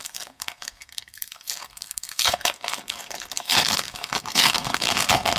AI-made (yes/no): yes